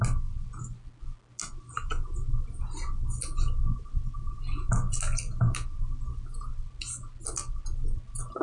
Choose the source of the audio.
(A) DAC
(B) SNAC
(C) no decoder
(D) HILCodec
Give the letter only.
C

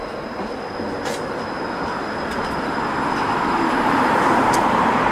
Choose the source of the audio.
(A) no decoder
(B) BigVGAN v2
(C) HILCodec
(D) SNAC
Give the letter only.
A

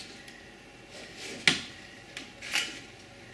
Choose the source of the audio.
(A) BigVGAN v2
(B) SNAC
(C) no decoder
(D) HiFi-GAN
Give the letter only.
C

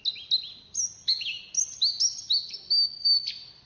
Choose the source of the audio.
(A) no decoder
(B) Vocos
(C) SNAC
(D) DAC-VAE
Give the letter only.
A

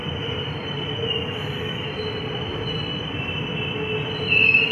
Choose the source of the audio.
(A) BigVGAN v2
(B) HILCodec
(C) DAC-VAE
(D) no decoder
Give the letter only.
D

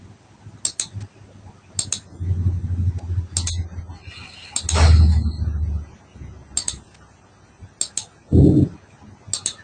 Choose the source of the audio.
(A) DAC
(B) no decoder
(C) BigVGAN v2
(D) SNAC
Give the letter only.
B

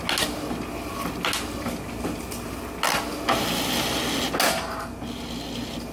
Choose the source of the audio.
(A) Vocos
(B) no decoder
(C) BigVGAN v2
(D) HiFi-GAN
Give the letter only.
B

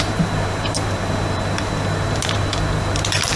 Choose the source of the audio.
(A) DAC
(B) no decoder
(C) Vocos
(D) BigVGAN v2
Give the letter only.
D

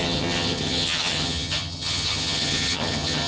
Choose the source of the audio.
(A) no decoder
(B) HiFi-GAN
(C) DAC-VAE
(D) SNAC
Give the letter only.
B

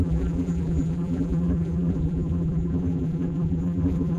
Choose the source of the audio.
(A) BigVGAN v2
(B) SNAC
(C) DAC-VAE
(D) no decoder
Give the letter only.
A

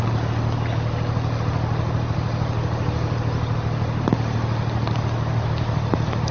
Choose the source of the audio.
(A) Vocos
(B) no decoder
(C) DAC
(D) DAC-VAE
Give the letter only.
B